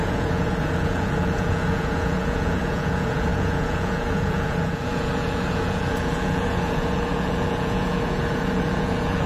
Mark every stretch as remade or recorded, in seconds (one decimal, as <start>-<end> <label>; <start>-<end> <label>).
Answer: 0.0-9.3 remade